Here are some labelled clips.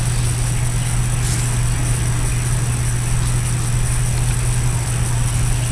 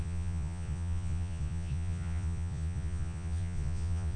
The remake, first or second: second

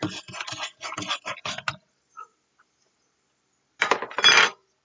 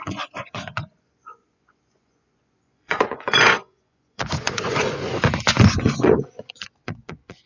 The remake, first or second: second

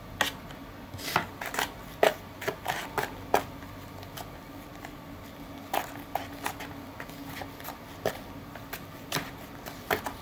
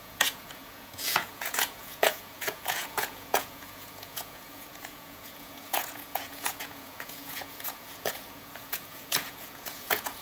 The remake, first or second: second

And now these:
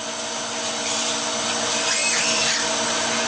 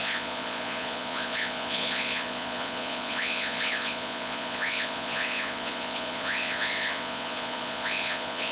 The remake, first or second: second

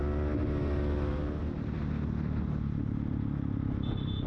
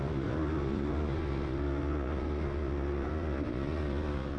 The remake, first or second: second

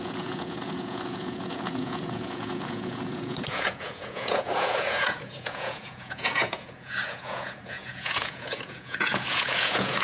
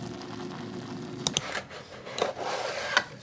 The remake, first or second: first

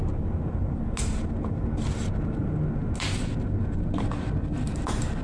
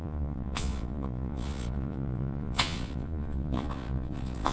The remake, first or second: second